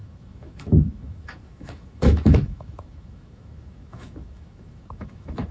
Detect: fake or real fake